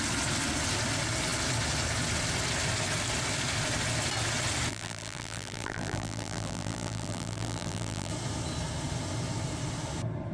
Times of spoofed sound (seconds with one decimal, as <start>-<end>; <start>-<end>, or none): 4.7-8.1